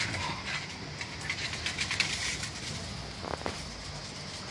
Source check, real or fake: real